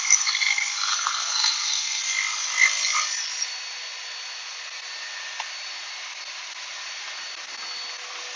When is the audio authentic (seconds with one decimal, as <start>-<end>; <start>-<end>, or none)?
0.0-0.9; 2.0-8.4